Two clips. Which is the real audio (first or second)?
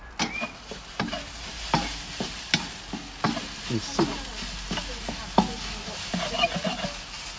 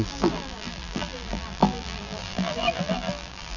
first